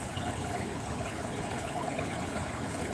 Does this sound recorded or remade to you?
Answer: remade